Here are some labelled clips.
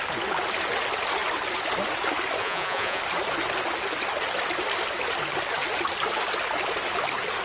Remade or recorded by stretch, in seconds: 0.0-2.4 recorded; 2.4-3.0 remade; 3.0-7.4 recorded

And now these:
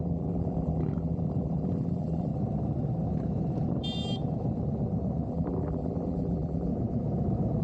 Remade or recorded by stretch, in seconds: 0.0-2.3 remade; 2.3-5.3 recorded; 5.3-6.7 remade; 6.7-7.6 recorded